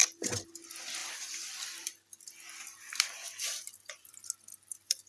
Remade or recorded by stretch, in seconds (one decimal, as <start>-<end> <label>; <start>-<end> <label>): 0.0-0.5 remade; 0.5-1.0 recorded; 1.0-4.1 remade; 4.1-4.5 recorded; 4.5-5.1 remade